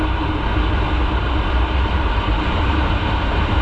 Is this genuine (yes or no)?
no